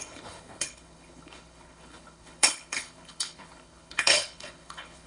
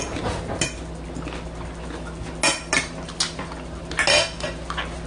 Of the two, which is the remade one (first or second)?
first